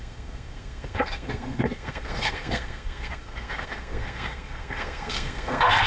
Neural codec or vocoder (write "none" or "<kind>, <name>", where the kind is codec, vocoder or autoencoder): codec, SNAC